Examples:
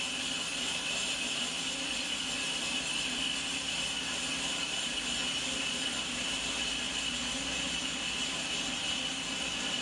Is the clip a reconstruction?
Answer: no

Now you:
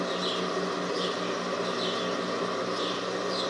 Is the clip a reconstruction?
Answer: no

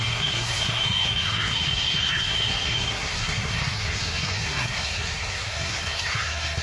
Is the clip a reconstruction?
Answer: yes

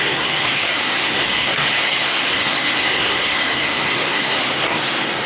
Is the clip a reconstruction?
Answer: yes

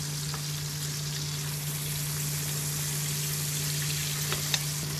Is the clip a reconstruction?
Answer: no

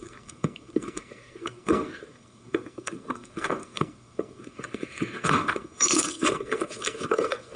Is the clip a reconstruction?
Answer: yes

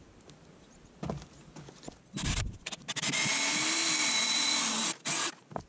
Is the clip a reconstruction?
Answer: no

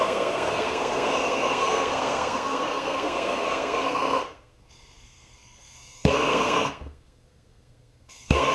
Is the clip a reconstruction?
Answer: yes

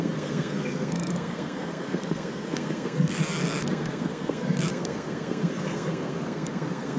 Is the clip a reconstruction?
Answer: yes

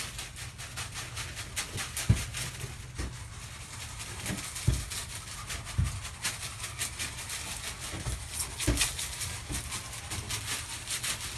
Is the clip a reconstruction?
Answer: no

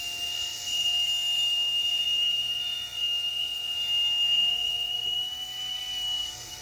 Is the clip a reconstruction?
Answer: yes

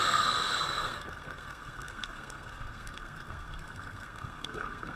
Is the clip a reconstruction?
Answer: yes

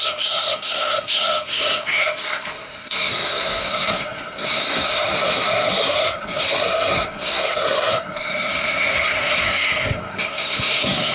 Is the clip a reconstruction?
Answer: yes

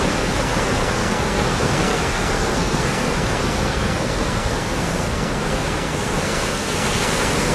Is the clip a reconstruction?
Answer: yes